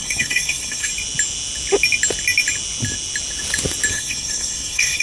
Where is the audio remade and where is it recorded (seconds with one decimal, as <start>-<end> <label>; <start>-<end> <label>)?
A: 0.0-0.9 remade; 0.9-3.9 recorded; 3.9-5.0 remade